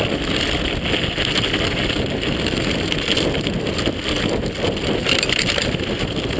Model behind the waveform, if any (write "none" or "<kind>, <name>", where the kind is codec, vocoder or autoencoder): none